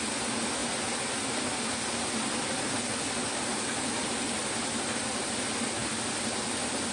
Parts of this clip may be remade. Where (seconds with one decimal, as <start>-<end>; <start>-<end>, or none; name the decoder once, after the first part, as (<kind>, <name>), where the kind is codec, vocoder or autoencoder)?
3.2-4.4 (vocoder, BigVGAN v2)